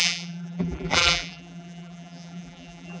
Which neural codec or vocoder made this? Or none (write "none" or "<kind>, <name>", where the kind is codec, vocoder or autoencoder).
vocoder, BigVGAN v2